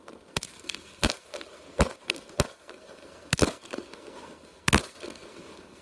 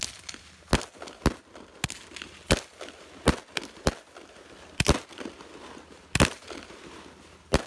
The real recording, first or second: second